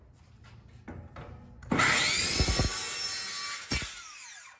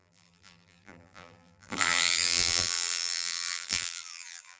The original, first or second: first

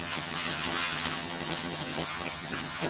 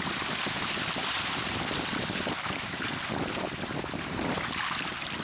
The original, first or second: second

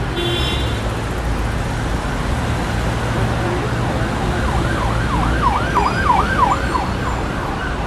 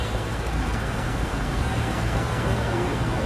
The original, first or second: first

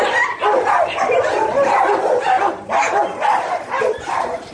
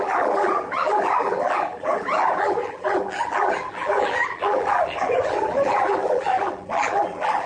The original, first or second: first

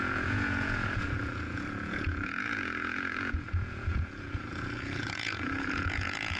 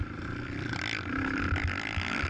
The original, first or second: second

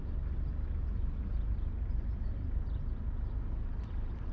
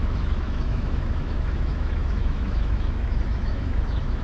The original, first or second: first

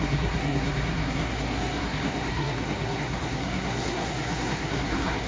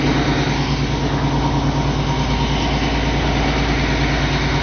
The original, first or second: second